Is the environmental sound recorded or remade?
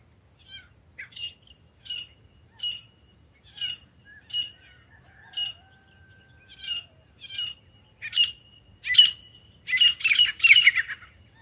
recorded